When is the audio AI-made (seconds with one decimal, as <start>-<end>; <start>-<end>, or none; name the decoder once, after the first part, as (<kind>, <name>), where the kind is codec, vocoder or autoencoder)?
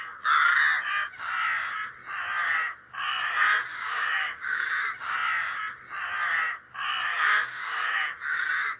3.7-4.7 (codec, DAC); 7.1-8.0